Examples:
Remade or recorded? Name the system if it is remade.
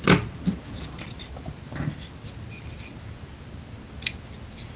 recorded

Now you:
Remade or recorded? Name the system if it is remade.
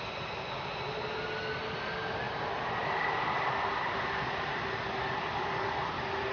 recorded